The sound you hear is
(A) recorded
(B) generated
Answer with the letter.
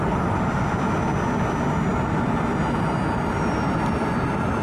A